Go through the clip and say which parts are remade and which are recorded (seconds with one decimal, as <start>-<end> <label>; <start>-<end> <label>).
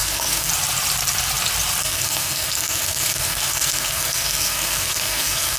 0.0-0.5 remade; 0.5-1.8 recorded; 1.8-5.6 remade